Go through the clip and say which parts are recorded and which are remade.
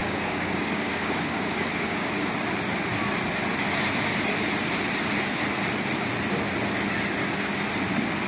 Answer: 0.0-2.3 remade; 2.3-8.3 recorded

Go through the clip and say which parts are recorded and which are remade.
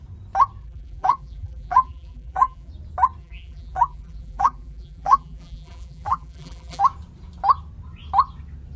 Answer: 0.0-0.6 recorded; 0.6-2.7 remade; 2.7-3.2 recorded; 3.2-6.8 remade; 6.8-8.8 recorded